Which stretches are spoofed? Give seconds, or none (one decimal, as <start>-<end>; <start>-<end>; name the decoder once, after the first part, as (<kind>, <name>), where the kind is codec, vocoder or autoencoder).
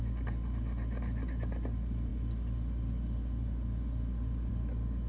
none